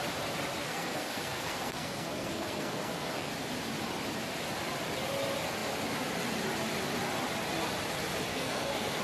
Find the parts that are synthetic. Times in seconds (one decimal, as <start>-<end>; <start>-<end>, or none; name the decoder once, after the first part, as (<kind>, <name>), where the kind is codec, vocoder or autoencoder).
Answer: 0.6-3.3 (codec, SNAC); 8.3-9.0